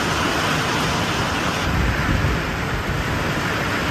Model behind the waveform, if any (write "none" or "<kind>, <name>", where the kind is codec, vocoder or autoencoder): none